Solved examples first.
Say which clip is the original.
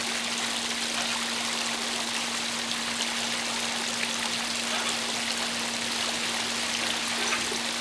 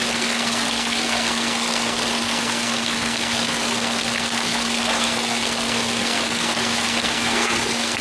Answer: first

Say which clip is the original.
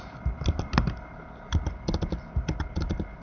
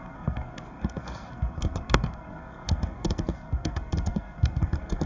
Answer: first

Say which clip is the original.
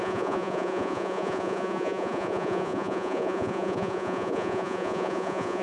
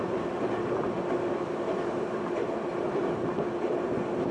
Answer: second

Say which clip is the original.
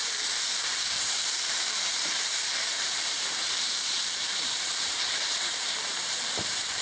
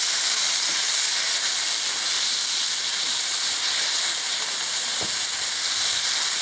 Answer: second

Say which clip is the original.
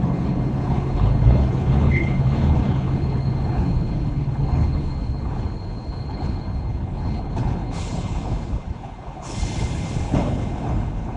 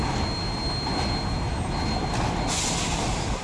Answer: second